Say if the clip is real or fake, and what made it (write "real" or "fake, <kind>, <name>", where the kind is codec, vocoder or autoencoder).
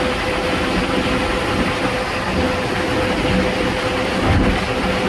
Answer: real